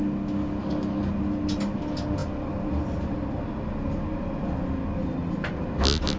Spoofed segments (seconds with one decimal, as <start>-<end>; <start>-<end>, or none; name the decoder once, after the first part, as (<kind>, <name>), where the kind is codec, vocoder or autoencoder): 0.6-1.1 (codec, DAC)